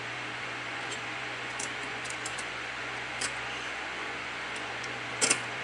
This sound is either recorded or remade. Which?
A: remade